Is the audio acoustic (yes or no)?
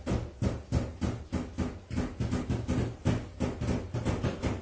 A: yes